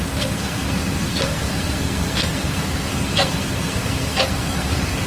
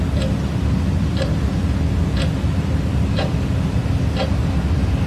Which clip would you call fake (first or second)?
first